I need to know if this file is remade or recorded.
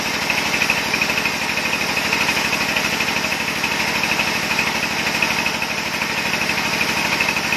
recorded